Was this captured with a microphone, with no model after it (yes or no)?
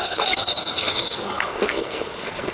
no